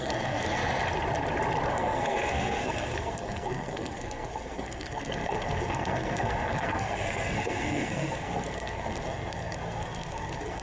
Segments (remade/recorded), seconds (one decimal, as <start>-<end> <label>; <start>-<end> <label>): 0.0-0.6 remade; 0.6-1.7 recorded; 1.7-10.6 remade